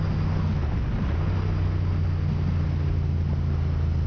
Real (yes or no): yes